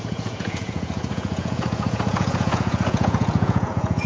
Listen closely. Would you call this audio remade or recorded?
remade